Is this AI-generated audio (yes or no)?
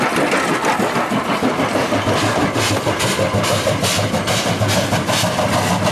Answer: no